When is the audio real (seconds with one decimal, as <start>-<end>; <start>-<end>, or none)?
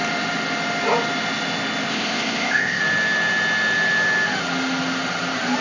0.0-1.9; 2.8-5.6